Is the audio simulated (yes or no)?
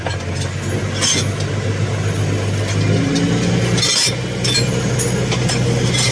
no